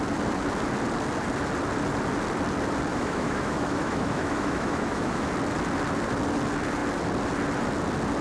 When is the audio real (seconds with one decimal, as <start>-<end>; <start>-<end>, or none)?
0.0-2.9; 5.3-8.2